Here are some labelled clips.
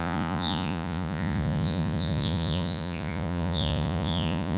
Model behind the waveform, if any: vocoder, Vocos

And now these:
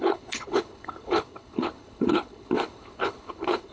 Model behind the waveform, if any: codec, HILCodec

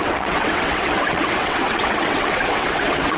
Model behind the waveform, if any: vocoder, WaveNeXt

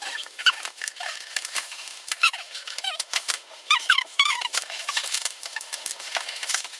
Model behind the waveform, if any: autoencoder, DAC-VAE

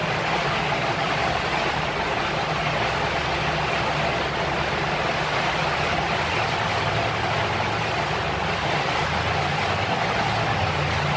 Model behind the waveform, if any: none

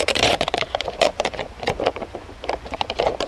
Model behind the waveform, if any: vocoder, Vocos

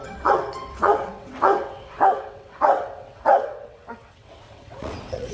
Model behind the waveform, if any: vocoder, WaveNeXt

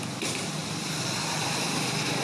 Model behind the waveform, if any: none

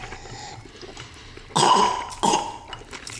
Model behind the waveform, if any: none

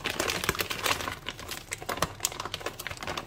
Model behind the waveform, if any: none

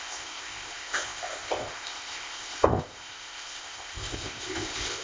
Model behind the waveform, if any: codec, ZipCodec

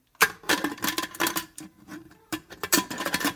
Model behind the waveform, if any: vocoder, BigVGAN v2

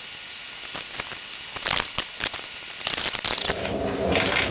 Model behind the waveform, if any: none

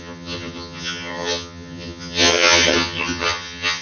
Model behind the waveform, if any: vocoder, HiFi-GAN